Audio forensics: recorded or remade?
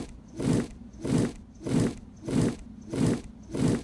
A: recorded